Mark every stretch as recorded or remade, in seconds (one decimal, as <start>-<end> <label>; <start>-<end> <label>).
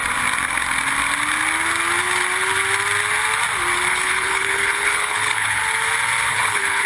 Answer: 0.0-3.9 recorded; 3.9-5.6 remade; 5.6-6.3 recorded; 6.3-6.9 remade